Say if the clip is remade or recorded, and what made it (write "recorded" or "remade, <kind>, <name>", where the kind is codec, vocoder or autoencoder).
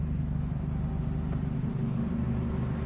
recorded